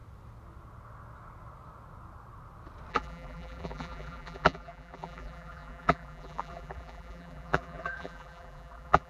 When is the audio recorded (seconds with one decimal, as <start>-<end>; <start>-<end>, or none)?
0.0-2.9